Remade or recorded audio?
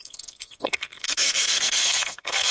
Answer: remade